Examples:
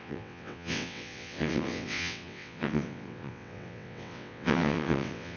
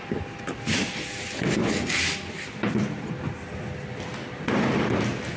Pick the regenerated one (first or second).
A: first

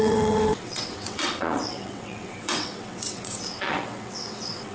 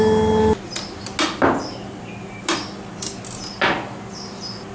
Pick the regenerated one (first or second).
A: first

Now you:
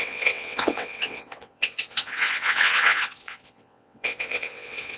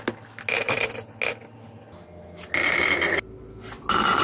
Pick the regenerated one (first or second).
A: first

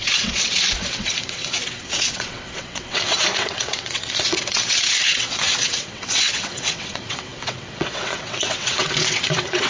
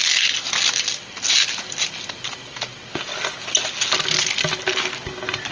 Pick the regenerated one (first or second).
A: first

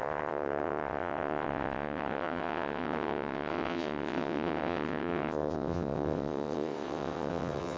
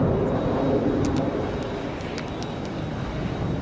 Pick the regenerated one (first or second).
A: first